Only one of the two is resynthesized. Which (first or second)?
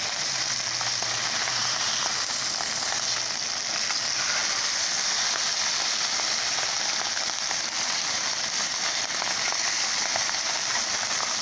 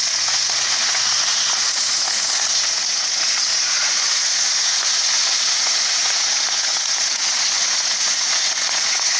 second